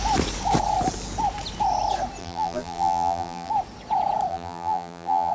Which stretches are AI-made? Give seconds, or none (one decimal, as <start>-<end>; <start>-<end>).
2.2-3.5; 4.3-5.3

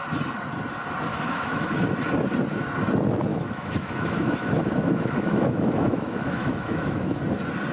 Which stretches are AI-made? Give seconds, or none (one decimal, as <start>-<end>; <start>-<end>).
1.1-1.9; 3.3-7.2